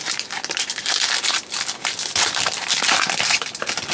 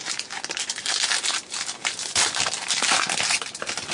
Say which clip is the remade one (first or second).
first